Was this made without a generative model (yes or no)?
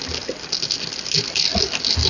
yes